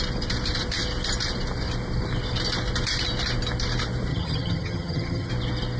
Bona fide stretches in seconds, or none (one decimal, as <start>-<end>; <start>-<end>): 0.0-4.1; 5.3-5.8